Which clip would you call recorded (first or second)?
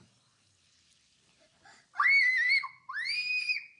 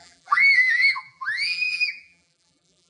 first